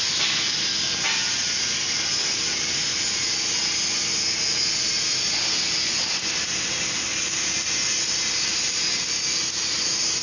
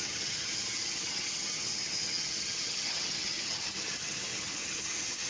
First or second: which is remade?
second